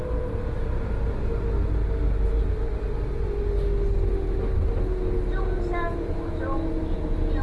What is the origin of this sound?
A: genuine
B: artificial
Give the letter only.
A